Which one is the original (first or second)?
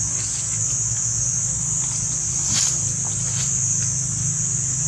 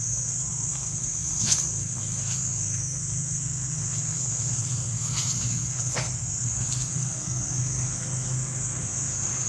first